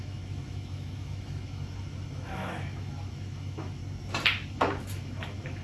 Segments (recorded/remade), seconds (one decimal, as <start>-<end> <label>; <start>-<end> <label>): 0.0-3.8 remade; 3.8-4.5 recorded; 4.5-5.6 remade